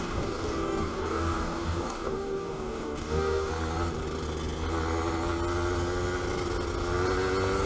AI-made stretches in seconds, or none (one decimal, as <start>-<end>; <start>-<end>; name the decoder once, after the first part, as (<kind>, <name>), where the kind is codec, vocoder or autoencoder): 0.0-3.5 (codec, DAC)